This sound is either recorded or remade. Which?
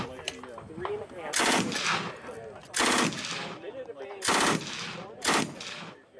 recorded